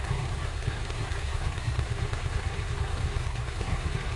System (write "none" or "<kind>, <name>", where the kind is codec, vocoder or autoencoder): codec, SNAC